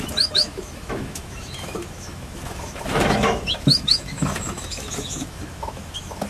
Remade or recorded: remade